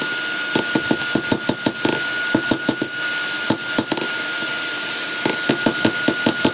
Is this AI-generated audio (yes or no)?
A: no